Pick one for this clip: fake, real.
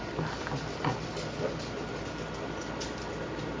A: real